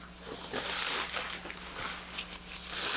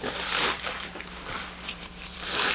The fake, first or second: second